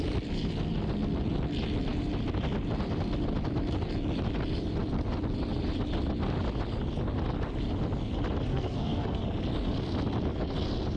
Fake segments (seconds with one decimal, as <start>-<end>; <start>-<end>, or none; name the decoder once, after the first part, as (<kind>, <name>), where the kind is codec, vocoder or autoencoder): 8.5-9.2 (codec, SNAC)